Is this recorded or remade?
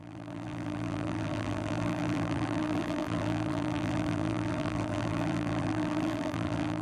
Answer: remade